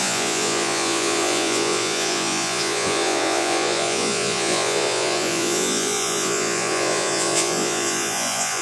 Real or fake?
fake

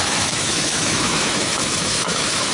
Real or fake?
fake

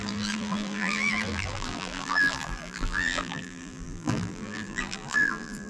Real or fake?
fake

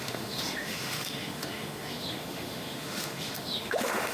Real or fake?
fake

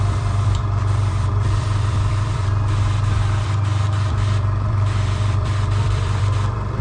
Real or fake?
fake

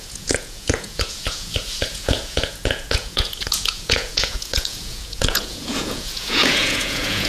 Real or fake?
fake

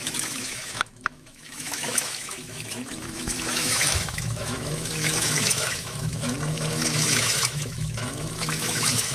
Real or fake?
fake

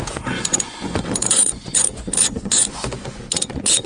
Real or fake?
fake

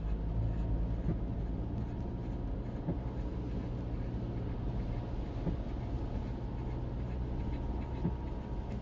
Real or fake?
real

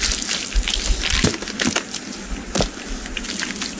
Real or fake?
real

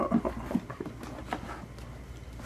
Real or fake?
real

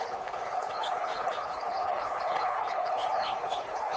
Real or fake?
fake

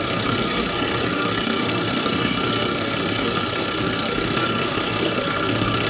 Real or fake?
fake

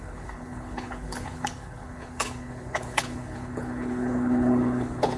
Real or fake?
fake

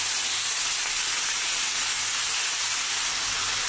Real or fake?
real